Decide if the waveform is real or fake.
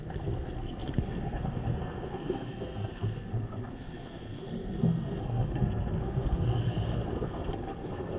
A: fake